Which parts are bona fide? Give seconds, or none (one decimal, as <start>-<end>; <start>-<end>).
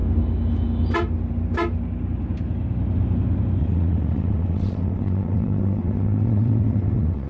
0.0-3.6